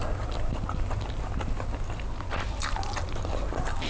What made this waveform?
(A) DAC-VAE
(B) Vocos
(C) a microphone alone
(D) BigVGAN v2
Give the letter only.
C